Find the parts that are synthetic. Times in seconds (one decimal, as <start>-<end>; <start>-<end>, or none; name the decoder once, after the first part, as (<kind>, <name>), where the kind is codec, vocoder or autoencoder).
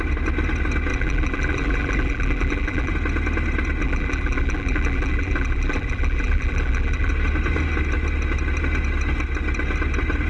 0.9-2.9 (vocoder, BigVGAN v2); 3.8-7.1